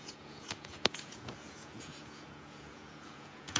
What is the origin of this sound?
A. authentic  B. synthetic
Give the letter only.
B